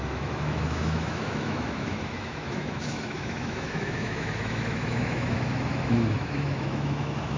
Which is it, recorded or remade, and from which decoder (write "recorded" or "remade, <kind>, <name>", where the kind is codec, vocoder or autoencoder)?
remade, autoencoder, DAC-VAE